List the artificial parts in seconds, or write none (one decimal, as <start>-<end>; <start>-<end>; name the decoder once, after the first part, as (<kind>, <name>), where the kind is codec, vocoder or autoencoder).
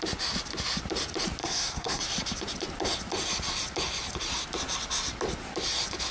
1.4-2.0 (codec, SNAC)